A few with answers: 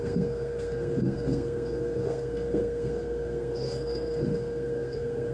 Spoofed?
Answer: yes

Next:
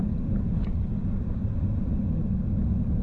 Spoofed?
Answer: no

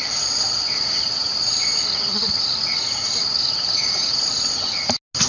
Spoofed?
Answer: no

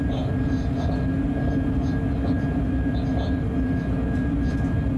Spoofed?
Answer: no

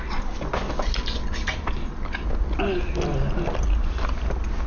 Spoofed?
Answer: no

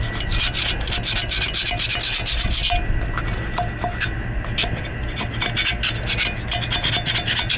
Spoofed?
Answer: no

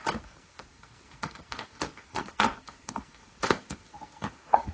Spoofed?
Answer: yes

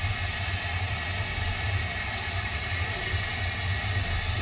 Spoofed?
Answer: no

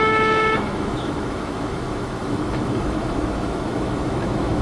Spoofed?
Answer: yes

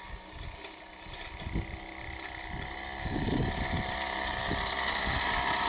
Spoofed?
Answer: no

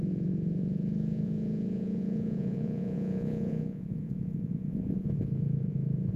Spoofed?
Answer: yes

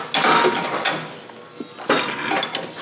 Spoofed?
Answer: no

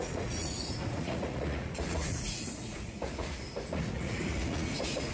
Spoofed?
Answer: yes